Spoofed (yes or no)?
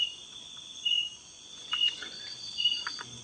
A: yes